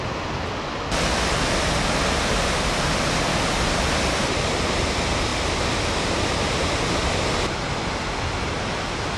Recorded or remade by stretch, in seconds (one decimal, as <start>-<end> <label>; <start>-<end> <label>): 0.0-9.2 recorded